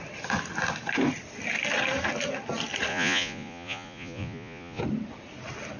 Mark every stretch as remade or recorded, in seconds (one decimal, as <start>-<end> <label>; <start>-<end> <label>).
0.0-2.9 recorded; 2.9-4.8 remade; 4.8-5.8 recorded